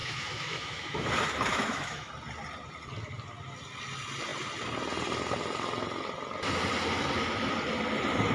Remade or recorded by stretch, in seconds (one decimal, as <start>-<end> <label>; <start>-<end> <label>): 0.0-1.1 remade; 1.1-1.5 recorded; 1.5-2.1 remade; 2.1-8.3 recorded